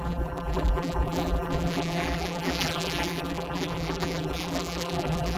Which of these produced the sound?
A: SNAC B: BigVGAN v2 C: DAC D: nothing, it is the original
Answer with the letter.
B